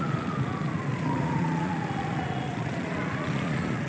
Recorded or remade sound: remade